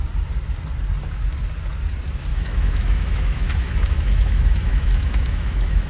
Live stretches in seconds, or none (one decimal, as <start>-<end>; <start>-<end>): 0.0-2.3